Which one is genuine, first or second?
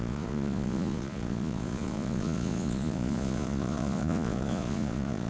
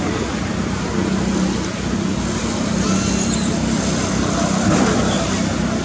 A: second